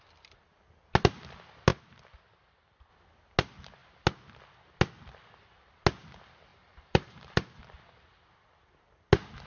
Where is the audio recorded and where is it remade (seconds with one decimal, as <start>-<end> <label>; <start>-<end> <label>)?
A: 0.0-6.5 recorded; 6.5-7.6 remade; 7.6-9.5 recorded